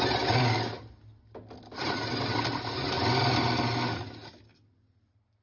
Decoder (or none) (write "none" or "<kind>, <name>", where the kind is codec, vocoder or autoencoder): none